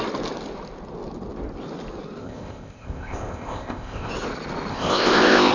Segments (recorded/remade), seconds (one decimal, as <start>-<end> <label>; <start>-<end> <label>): 0.0-2.2 recorded; 2.2-4.1 remade; 4.1-4.7 recorded; 4.7-5.5 remade